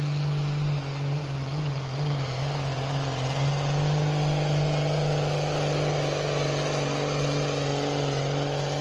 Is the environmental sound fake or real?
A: real